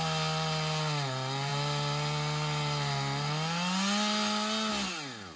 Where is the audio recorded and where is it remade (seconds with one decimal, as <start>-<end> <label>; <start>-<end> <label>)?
0.0-5.4 recorded